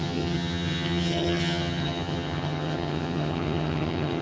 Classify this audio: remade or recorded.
remade